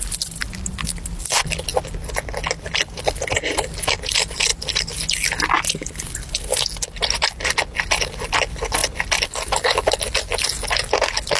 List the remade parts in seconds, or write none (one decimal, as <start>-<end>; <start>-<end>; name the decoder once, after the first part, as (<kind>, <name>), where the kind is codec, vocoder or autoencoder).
8.8-10.0 (vocoder, BigVGAN v2)